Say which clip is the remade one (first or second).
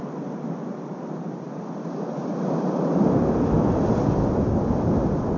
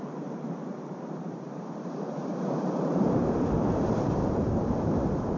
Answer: second